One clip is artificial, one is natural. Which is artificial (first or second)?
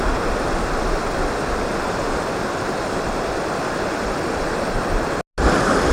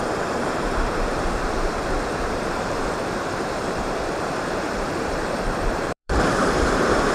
second